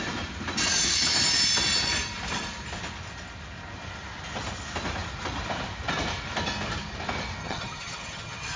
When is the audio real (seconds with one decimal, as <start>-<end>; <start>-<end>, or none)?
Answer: 0.0-7.4